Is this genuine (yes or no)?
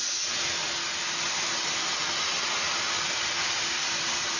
yes